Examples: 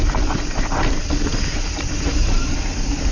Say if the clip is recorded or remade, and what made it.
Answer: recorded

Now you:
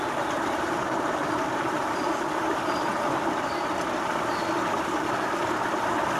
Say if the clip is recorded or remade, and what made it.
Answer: recorded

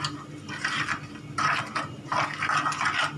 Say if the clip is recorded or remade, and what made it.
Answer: recorded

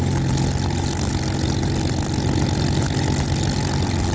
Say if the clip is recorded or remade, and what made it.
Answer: recorded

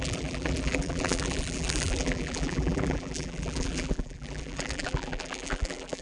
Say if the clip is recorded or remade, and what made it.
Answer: remade, vocoder, BigVGAN v2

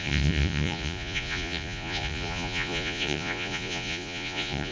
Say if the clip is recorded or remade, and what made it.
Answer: remade, vocoder, Vocos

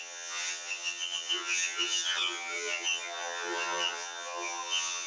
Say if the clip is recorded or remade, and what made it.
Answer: remade, vocoder, HiFi-GAN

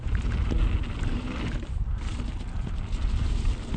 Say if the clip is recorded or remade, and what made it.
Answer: recorded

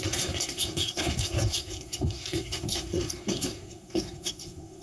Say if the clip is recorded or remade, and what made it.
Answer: remade, codec, SNAC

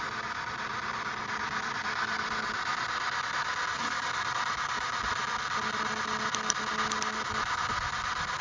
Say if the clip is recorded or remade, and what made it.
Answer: recorded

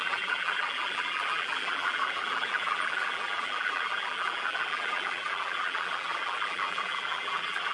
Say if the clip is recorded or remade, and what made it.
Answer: remade, vocoder, BigVGAN v2